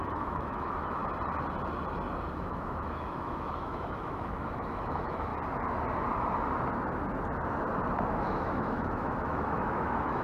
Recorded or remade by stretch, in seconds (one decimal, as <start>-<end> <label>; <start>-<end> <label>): 0.0-1.0 remade; 1.0-2.3 recorded; 2.3-5.3 remade; 5.3-8.1 recorded; 8.1-10.2 remade